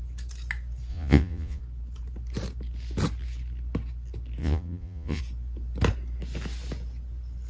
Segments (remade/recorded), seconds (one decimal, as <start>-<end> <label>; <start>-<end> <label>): 0.0-0.9 recorded; 0.9-1.6 remade; 1.6-4.4 recorded; 4.4-5.2 remade; 5.2-7.5 recorded